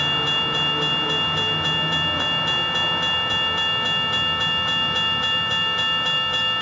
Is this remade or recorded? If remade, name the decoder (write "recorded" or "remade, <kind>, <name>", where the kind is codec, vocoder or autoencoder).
recorded